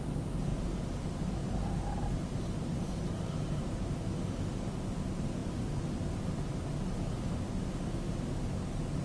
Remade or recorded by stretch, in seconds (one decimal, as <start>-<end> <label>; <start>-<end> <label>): 0.0-0.5 recorded; 0.5-4.1 remade; 4.1-9.0 recorded